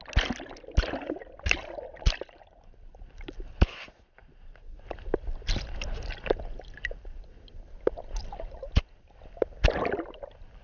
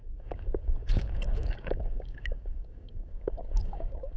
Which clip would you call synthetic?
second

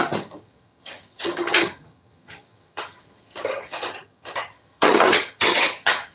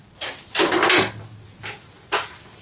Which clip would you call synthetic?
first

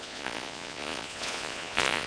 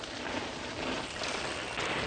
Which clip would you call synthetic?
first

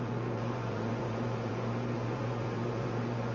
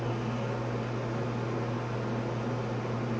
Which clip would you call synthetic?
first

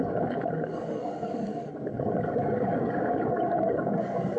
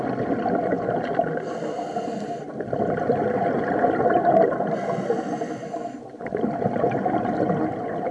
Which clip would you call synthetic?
first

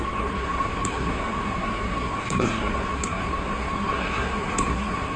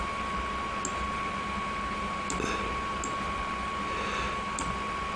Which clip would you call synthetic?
first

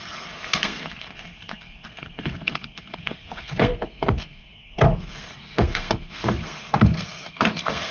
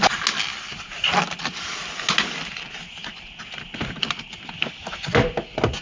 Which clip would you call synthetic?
first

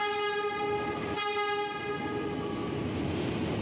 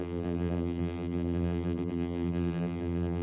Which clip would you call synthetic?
second